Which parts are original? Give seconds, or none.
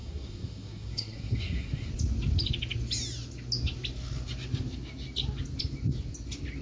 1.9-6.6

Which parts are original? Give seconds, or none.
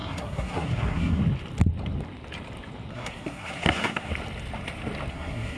1.2-2.9; 4.1-5.1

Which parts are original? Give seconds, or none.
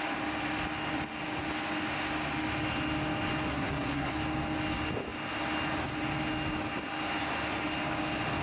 0.0-3.5; 4.1-8.4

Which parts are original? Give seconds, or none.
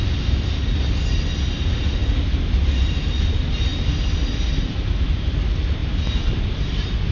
0.0-7.1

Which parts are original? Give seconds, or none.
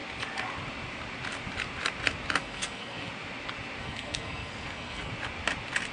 0.0-2.4; 3.1-3.8; 5.1-5.9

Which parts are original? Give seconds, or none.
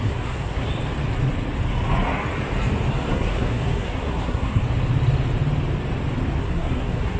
0.7-3.1; 4.6-6.4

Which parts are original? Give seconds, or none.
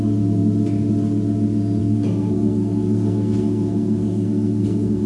0.0-1.8